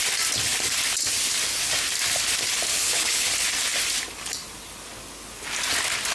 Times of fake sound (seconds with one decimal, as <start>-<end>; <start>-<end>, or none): 2.7-3.3